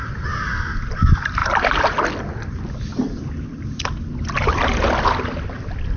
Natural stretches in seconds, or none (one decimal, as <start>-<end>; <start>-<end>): 0.0-6.0